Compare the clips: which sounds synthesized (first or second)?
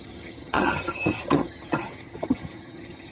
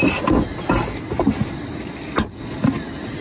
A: first